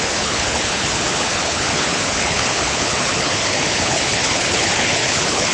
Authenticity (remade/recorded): remade